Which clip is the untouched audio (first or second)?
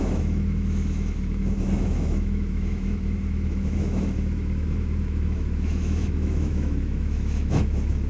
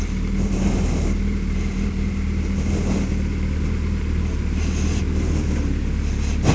second